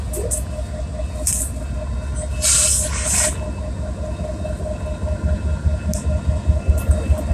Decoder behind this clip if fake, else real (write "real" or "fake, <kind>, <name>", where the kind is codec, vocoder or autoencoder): real